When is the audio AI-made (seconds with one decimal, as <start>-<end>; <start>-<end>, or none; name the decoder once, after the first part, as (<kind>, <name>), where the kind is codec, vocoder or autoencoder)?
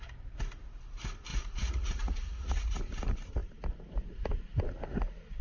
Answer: 1.3-2.8 (vocoder, Vocos)